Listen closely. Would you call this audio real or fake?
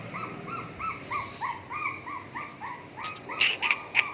real